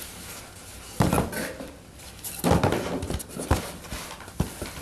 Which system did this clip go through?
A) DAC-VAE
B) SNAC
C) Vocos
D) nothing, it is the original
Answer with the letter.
D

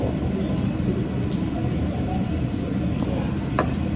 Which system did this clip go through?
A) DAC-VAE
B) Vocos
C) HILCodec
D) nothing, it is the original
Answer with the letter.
D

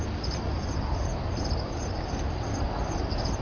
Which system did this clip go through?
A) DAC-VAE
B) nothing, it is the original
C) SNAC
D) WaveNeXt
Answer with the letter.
B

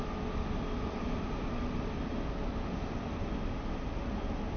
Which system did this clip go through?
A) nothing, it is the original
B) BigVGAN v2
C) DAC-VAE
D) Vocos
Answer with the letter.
A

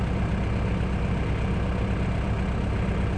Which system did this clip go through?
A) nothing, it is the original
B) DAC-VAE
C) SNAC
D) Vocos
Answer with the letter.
A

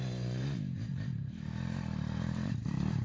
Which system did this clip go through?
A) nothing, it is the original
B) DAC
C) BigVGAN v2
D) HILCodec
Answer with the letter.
C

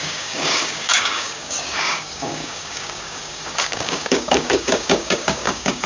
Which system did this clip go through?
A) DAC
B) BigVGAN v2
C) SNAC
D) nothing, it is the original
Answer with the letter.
A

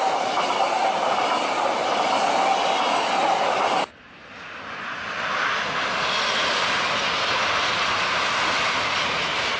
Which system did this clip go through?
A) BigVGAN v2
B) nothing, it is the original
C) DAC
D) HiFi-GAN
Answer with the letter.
B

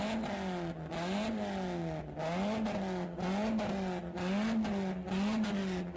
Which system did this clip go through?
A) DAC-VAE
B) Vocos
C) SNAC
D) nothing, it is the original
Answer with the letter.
D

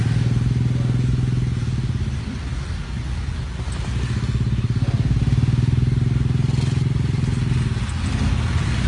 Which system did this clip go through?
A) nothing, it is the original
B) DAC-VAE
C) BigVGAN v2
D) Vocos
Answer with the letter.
A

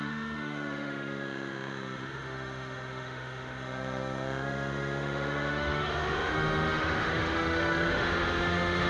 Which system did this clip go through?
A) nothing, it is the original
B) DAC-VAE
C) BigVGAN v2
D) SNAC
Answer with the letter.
B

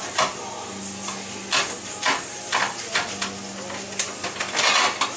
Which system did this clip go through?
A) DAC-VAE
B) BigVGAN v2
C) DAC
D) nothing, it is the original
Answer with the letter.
D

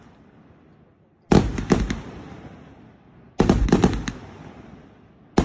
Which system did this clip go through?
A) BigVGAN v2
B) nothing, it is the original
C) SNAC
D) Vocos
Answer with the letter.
B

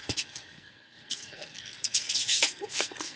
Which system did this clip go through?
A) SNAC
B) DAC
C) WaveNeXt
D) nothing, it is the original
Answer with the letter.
A